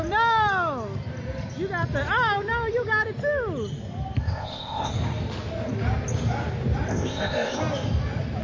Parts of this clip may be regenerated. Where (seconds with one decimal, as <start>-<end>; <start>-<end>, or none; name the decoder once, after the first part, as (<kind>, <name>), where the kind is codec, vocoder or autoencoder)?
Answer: 4.2-4.9 (codec, ZipCodec); 6.9-7.6